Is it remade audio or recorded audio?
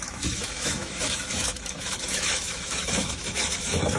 remade